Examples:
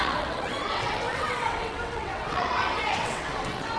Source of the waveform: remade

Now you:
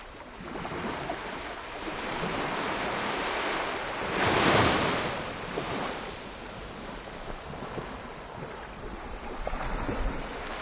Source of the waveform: remade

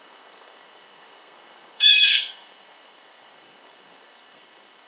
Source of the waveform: remade